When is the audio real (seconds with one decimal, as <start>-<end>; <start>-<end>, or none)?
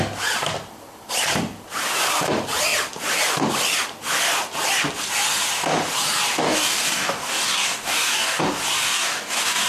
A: 0.0-6.4; 8.4-8.8